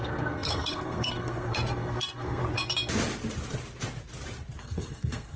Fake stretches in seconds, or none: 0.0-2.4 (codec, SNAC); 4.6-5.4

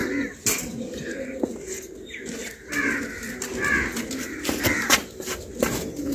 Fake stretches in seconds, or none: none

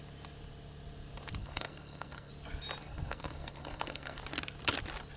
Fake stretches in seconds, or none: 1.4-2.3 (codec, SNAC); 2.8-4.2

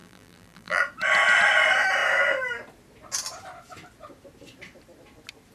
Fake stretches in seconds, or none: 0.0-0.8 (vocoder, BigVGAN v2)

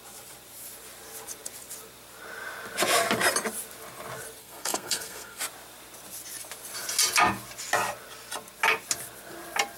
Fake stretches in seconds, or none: 4.4-5.4 (codec, SNAC)